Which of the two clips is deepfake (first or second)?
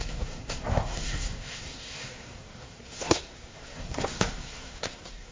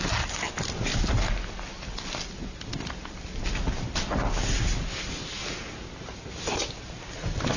first